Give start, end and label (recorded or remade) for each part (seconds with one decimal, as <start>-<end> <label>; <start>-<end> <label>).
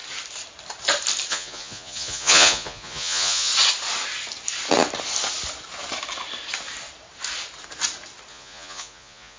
0.0-1.3 recorded; 1.3-3.5 remade; 3.5-8.3 recorded; 8.3-9.4 remade